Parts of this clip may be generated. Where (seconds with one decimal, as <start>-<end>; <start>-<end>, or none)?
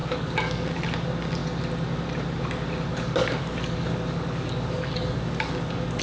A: 0.0-0.8; 2.9-6.0